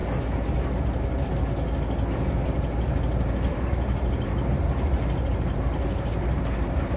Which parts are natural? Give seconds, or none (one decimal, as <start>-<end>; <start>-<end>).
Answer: 0.0-3.5

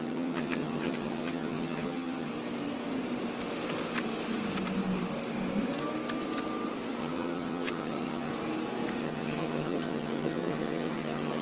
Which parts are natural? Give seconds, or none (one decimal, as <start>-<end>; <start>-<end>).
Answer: 2.3-7.0; 8.3-9.0

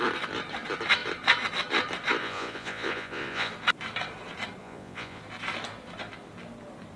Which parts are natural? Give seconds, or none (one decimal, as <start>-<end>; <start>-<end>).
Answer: 0.0-2.2; 3.5-4.6; 5.2-7.0

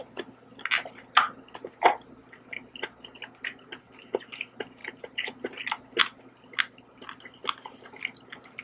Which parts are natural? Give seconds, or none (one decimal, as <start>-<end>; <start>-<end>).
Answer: 0.0-8.6

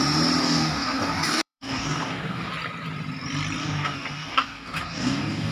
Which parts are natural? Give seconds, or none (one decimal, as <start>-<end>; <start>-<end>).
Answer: 0.0-0.4; 2.5-3.6

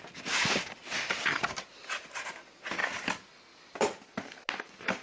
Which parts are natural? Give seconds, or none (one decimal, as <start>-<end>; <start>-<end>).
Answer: 0.0-5.0